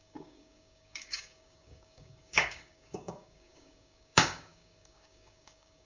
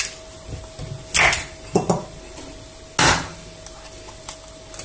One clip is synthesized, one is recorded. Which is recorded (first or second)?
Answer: second